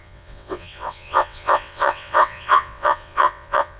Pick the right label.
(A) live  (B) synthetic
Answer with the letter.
B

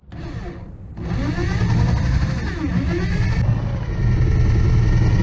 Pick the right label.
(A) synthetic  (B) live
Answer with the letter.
B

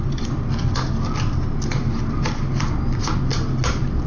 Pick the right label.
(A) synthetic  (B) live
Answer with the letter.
B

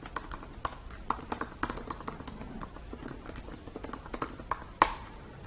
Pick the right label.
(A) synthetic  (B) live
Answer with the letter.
B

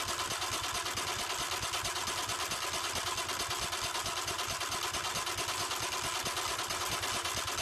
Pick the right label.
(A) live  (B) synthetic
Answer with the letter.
A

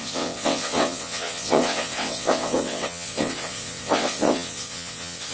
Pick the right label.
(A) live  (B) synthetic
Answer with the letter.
B